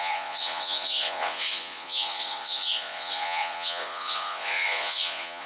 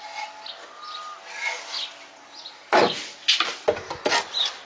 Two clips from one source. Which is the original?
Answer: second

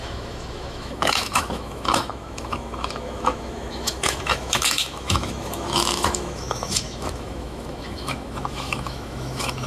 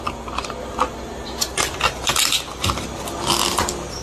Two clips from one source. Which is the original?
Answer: second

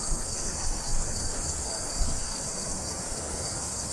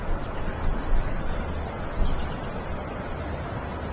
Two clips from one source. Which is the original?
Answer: second